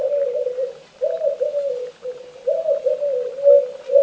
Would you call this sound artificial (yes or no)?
no